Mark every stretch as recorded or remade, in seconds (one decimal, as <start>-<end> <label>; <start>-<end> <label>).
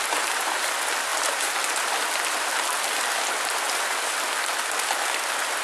0.0-5.6 recorded